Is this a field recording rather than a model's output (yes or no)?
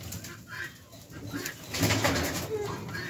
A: yes